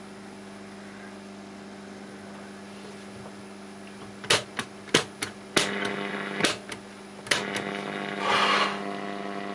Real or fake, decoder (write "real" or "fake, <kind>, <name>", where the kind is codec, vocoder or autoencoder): real